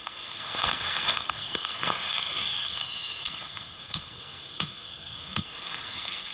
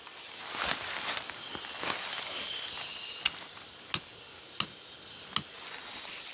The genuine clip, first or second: second